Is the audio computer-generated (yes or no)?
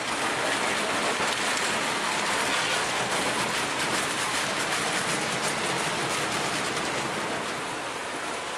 no